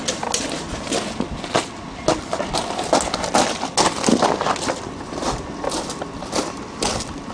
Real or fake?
real